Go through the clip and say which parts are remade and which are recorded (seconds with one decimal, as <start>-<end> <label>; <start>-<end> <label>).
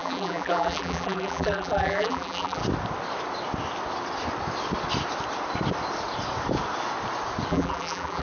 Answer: 0.0-2.6 remade; 2.6-7.5 recorded; 7.5-8.2 remade